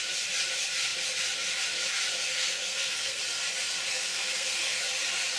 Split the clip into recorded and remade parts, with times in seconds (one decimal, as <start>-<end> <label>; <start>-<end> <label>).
0.0-2.3 recorded; 2.3-3.2 remade; 3.2-3.9 recorded; 3.9-4.8 remade; 4.8-5.4 recorded